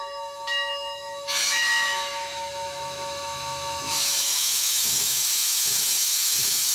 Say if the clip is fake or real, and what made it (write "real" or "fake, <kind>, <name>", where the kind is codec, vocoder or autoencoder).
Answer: fake, autoencoder, DAC-VAE